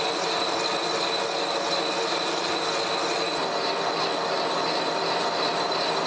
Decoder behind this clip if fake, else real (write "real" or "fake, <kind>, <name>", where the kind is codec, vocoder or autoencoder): real